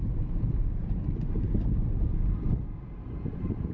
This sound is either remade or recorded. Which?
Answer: recorded